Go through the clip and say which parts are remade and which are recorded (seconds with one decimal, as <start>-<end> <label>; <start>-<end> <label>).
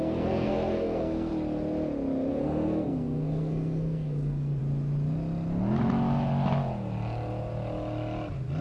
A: 0.0-1.3 remade; 1.3-2.3 recorded; 2.3-4.6 remade; 4.6-8.6 recorded